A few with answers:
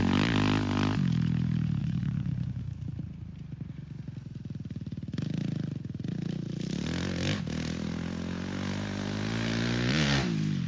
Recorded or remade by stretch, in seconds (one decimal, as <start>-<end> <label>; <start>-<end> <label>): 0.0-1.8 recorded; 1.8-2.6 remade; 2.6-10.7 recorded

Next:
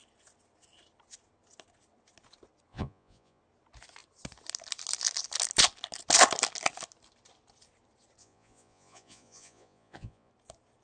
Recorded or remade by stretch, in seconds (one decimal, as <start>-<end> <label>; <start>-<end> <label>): 0.0-2.7 recorded; 2.7-3.4 remade; 3.4-8.2 recorded; 8.2-10.3 remade; 10.3-10.8 recorded

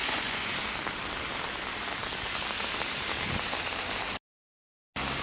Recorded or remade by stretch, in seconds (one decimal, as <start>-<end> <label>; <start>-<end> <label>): 0.0-0.5 remade; 0.5-5.2 recorded

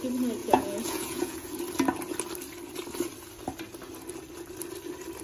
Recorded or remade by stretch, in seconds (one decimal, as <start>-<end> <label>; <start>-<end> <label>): 0.0-0.4 recorded; 0.4-1.6 remade; 1.6-5.2 recorded